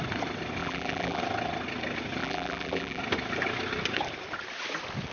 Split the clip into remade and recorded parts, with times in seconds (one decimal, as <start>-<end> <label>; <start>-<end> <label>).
0.0-0.6 recorded; 0.6-1.2 remade; 1.2-2.2 recorded; 2.2-3.0 remade; 3.0-5.1 recorded